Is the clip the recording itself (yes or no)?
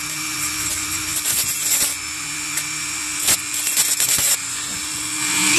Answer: no